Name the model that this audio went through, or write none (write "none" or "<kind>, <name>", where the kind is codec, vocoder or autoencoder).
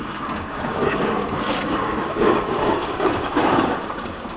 codec, DAC